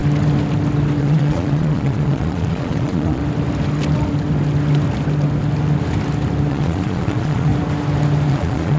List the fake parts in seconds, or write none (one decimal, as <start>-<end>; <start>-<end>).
1.0-3.2; 6.5-7.5; 8.3-8.8